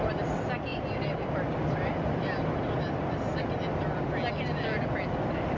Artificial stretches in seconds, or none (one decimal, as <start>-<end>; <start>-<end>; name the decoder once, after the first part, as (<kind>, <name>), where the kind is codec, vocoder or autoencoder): 0.7-3.4 (vocoder, BigVGAN v2)